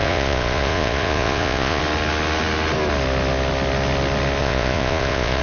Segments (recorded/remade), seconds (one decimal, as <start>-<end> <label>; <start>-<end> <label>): 0.0-1.8 remade; 1.8-4.4 recorded; 4.4-5.4 remade